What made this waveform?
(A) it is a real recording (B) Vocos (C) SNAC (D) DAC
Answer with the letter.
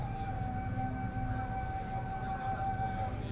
A